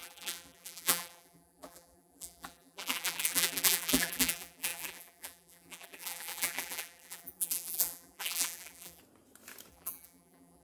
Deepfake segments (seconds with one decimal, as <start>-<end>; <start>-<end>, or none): 0.0-9.0; 9.7-10.6